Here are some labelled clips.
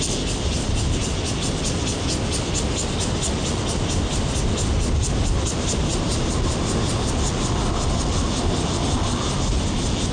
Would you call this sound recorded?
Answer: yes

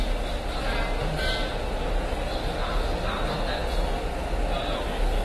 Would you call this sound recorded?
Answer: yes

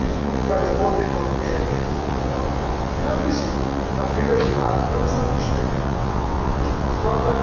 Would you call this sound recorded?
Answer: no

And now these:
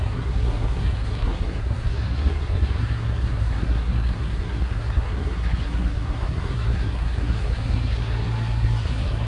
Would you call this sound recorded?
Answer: no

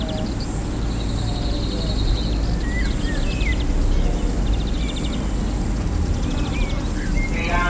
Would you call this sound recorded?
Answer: yes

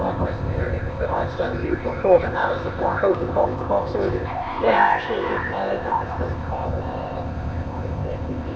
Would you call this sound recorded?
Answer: no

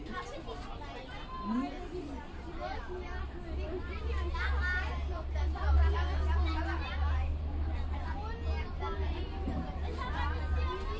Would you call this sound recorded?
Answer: yes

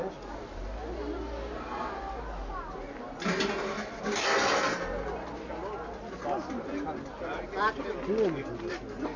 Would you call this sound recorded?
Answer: yes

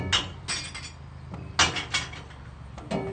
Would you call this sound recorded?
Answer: yes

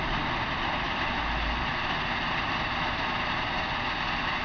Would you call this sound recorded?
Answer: yes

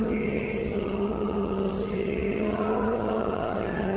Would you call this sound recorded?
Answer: no